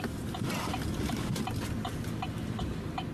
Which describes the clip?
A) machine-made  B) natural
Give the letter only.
B